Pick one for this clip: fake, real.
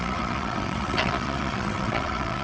fake